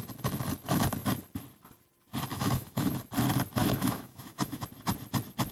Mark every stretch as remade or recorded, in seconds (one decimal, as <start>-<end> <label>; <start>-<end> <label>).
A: 0.0-2.3 recorded; 2.3-2.9 remade; 2.9-3.6 recorded; 3.6-4.6 remade; 4.6-5.5 recorded